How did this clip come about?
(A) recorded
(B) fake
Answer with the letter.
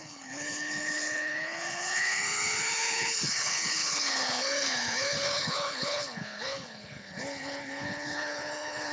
B